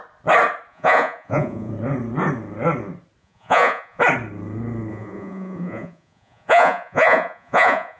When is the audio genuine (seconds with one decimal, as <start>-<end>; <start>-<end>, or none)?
0.0-0.7; 1.7-3.2; 4.0-4.9